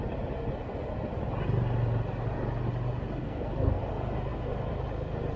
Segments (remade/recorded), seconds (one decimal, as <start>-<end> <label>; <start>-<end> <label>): 0.0-3.2 recorded; 3.2-3.8 remade; 3.8-5.4 recorded